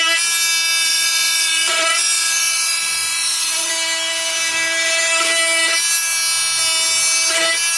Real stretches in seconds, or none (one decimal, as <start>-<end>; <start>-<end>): 0.0-0.9; 3.7-7.8